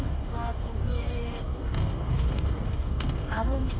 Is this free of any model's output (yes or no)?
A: no